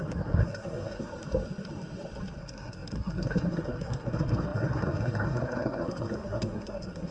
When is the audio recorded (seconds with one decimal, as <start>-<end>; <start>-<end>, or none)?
1.1-2.4